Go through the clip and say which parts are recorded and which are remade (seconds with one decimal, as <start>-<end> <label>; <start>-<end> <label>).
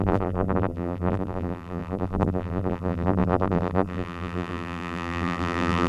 0.0-5.9 remade